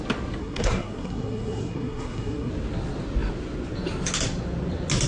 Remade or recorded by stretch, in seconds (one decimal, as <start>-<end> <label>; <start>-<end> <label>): 0.0-0.4 recorded; 0.4-2.5 remade; 2.5-5.1 recorded